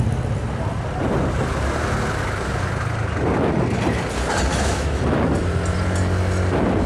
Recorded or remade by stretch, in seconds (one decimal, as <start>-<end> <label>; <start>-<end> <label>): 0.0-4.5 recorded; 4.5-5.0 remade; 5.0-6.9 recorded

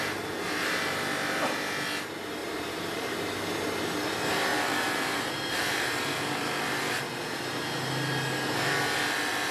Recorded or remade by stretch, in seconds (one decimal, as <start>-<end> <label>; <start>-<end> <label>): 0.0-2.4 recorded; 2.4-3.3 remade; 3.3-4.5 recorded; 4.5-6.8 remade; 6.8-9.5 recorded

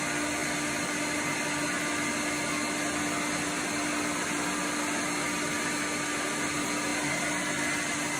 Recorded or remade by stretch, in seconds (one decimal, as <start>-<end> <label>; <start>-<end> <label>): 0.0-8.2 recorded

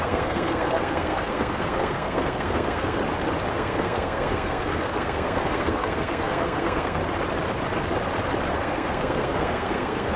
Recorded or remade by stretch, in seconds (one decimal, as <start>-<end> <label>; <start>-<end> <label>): 0.0-3.0 remade; 3.0-3.5 recorded; 3.5-7.0 remade; 7.0-8.5 recorded; 8.5-10.2 remade

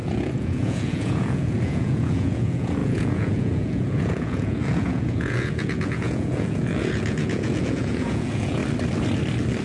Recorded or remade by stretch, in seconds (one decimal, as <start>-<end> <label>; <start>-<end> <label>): 0.0-8.6 remade; 8.6-9.6 recorded